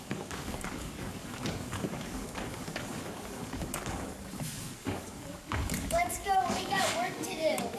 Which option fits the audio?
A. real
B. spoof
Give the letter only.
B